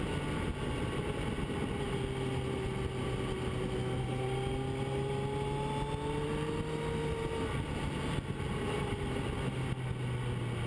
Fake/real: real